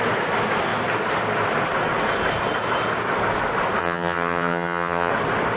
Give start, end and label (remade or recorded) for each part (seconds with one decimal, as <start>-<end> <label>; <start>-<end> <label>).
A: 0.0-3.8 recorded; 3.8-5.1 remade; 5.1-5.6 recorded